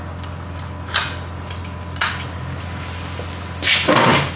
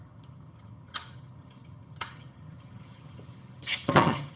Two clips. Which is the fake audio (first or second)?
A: second